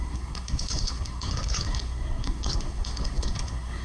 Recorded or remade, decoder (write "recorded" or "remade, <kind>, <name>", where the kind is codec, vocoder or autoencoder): remade, codec, SNAC